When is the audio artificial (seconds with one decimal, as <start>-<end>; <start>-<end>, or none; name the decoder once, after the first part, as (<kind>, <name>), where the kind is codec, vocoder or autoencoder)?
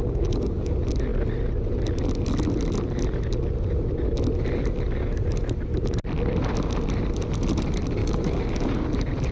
0.0-0.7 (codec, DAC); 8.0-8.7